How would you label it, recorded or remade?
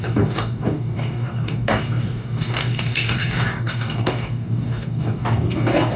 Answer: remade